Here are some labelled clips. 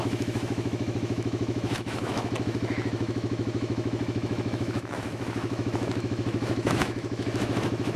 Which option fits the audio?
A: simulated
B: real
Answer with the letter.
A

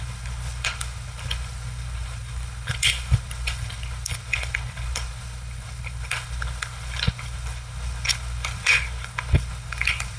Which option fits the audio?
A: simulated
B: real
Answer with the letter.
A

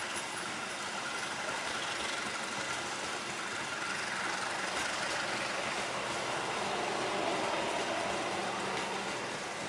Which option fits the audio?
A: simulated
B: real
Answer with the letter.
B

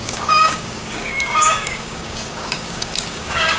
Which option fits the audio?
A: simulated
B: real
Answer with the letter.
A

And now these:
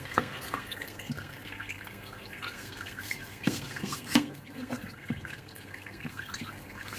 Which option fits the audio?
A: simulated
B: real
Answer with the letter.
A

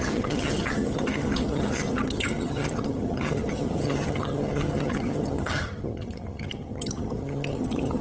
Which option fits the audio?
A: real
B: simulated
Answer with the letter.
B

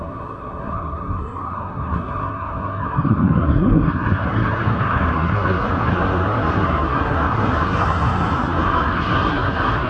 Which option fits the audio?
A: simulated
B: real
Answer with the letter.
A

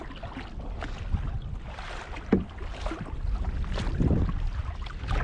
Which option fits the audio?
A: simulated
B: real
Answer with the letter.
B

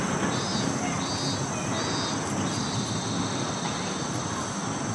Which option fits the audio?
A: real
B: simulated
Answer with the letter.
A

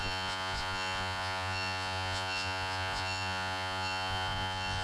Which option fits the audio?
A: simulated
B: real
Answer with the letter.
A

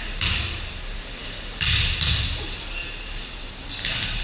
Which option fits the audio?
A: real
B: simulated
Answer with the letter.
A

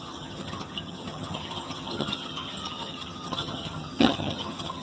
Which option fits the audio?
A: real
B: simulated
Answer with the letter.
B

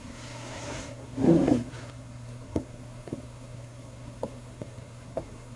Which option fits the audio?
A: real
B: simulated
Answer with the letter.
B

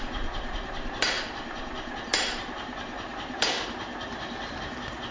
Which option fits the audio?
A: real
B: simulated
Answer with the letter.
B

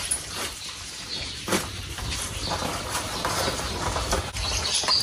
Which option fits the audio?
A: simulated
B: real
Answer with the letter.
A